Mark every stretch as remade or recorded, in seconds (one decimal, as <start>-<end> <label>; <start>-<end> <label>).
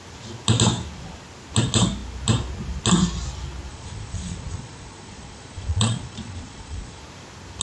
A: 0.0-3.7 recorded; 3.7-7.0 remade; 7.0-7.6 recorded